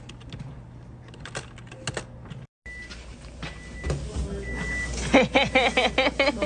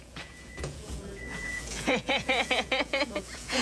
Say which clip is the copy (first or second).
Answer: second